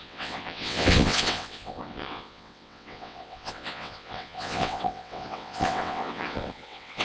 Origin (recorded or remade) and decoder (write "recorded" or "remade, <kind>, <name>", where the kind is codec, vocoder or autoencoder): remade, vocoder, WaveNeXt